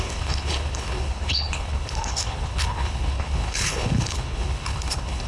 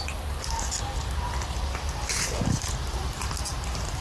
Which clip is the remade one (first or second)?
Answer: first